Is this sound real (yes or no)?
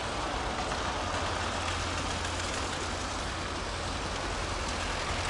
yes